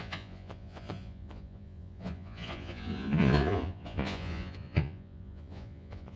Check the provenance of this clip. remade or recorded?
remade